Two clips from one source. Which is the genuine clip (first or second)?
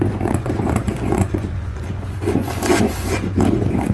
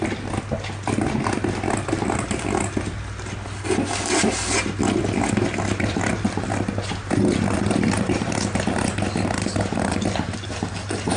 second